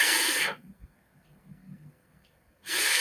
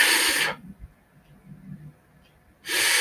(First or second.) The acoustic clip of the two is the second